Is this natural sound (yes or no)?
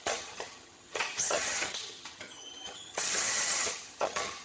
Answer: no